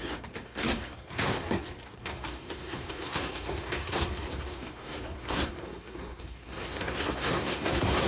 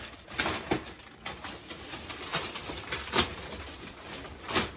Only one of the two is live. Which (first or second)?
second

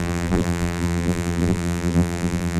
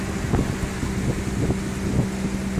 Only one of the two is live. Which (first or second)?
second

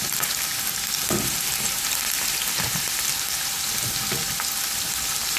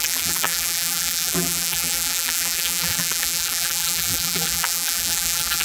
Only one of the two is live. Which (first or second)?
first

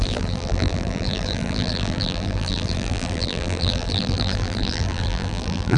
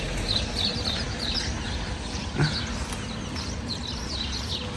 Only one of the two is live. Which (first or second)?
second